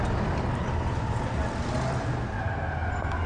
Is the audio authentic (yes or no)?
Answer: yes